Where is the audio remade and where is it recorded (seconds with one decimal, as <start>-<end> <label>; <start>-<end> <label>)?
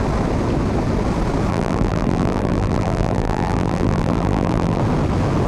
0.0-1.5 recorded; 1.5-4.8 remade; 4.8-5.5 recorded